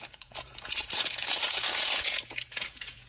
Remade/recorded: remade